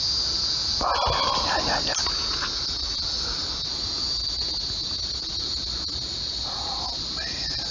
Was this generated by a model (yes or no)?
no